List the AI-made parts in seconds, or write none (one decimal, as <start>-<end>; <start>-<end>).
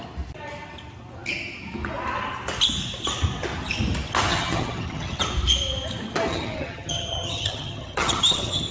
4.3-5.2; 6.3-8.7